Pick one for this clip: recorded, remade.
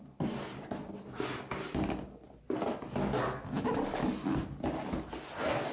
recorded